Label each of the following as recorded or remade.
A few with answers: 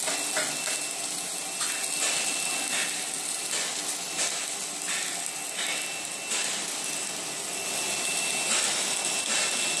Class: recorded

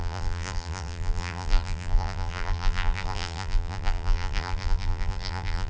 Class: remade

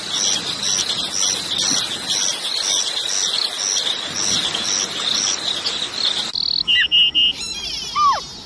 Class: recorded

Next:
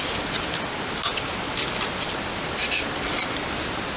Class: recorded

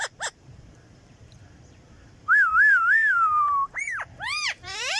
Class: remade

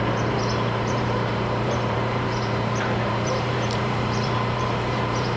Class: remade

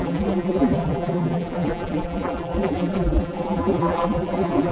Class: remade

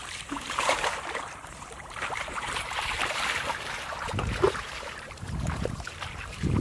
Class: remade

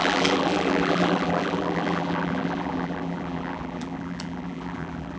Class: remade